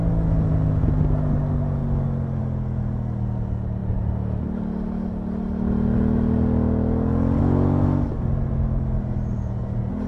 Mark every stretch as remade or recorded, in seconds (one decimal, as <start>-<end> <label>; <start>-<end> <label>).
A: 0.0-10.1 recorded